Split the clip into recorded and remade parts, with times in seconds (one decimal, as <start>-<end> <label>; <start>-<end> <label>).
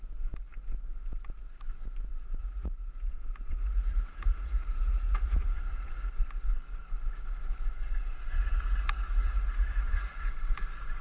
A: 0.0-2.4 recorded; 2.4-3.1 remade; 3.1-3.5 recorded; 3.5-6.1 remade; 6.1-8.3 recorded; 8.3-10.3 remade; 10.3-11.0 recorded